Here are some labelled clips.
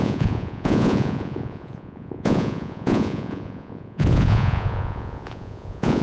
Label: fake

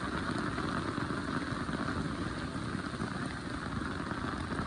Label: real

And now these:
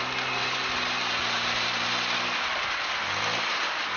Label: real